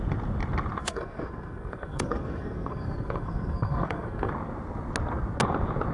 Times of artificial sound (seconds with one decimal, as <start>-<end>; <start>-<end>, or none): 0.8-4.3